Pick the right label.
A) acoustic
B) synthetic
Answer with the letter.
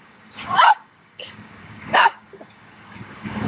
B